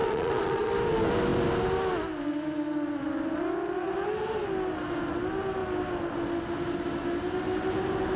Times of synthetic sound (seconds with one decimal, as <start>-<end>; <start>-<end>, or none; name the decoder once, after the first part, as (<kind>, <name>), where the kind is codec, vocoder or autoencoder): 0.0-0.7 (vocoder, Vocos)